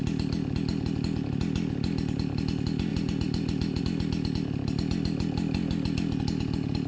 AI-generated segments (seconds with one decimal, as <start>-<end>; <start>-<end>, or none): 2.9-3.8